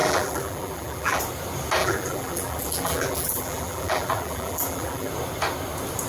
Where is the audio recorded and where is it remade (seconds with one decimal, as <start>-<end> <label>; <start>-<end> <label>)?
0.0-1.2 remade; 1.2-1.8 recorded; 1.8-5.1 remade; 5.1-6.1 recorded